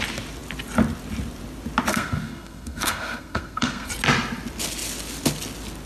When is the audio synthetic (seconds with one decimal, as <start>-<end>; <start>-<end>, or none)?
1.9-3.9